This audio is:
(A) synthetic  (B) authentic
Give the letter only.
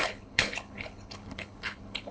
A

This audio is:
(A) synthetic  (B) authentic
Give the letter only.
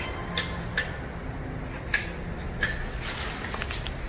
B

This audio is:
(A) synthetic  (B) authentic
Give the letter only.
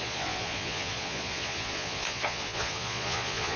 A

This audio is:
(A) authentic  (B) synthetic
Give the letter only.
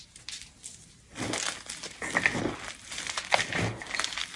A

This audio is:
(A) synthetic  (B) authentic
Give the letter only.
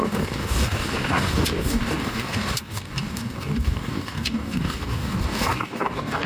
A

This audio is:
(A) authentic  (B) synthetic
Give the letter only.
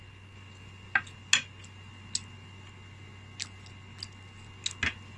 A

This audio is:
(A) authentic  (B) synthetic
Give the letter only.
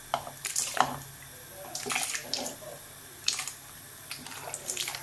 A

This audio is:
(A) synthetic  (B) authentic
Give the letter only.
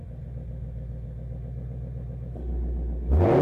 B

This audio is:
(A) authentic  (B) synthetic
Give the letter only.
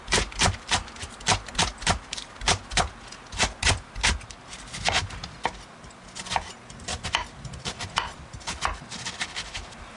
A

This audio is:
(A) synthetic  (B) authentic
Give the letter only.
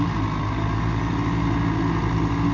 B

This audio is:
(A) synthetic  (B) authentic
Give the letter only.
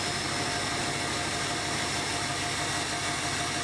B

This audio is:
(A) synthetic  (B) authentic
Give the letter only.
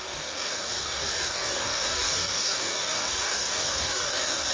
A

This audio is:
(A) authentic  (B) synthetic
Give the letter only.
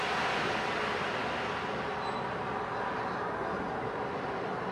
A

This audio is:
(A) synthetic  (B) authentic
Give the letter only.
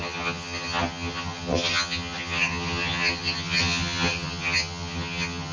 A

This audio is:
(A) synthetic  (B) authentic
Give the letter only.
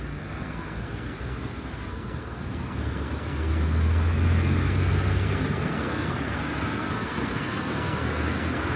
A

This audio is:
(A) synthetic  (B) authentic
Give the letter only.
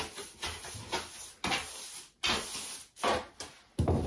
B